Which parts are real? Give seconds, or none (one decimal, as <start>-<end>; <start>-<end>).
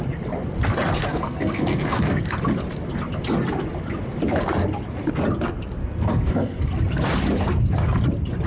0.0-1.0; 2.2-5.8; 6.7-8.5